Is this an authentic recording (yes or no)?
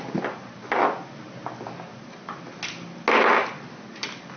yes